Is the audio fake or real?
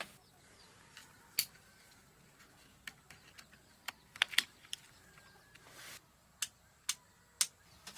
real